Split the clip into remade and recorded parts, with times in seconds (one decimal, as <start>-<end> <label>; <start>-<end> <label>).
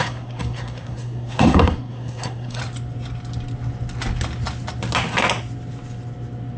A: 0.0-2.6 remade; 2.6-6.6 recorded